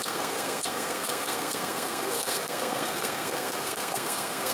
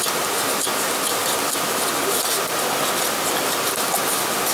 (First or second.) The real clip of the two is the second